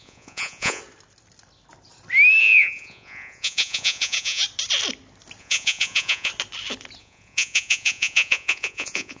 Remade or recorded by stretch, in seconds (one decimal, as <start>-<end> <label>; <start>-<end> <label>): 0.0-0.8 remade; 0.8-2.4 recorded; 2.4-4.4 remade; 4.4-5.4 recorded; 5.4-6.3 remade; 6.3-7.0 recorded; 7.0-9.2 remade